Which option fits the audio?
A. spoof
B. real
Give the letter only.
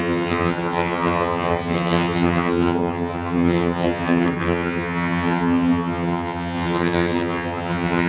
A